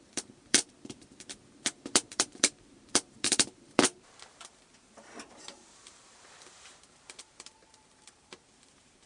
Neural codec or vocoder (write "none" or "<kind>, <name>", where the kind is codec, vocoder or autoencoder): vocoder, BigVGAN v2